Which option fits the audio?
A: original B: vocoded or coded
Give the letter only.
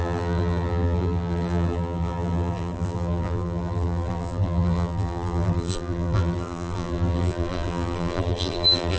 B